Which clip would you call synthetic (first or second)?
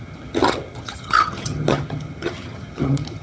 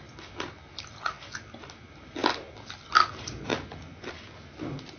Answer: first